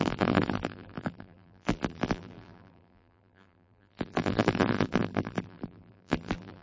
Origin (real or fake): fake